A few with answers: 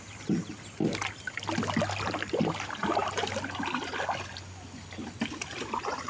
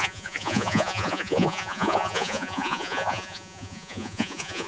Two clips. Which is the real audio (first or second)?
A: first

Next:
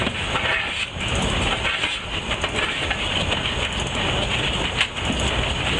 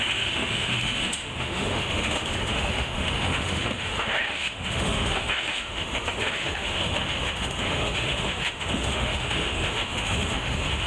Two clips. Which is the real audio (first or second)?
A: first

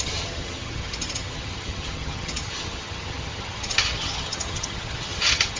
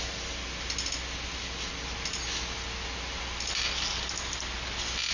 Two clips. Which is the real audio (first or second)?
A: second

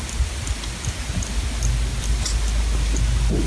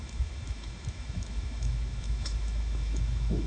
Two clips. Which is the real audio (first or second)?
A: first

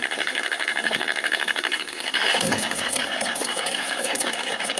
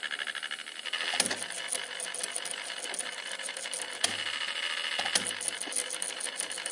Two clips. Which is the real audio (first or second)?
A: second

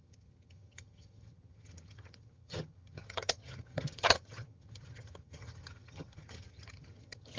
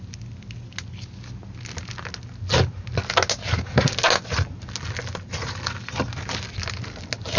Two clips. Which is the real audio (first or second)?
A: second